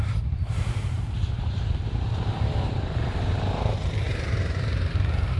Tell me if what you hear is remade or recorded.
remade